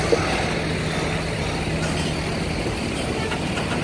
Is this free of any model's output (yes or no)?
yes